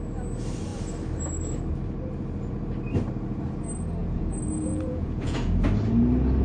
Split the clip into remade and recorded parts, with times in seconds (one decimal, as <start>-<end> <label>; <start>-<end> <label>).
0.0-4.0 recorded; 4.0-5.6 remade; 5.6-6.4 recorded